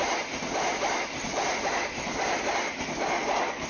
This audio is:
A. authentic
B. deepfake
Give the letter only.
A